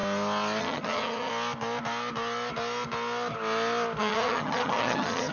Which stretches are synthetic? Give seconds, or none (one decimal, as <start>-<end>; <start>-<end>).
0.6-1.3; 4.0-5.3